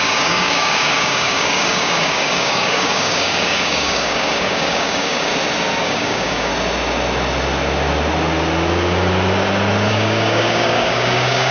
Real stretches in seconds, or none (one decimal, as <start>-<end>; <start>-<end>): 5.3-5.8; 6.5-9.9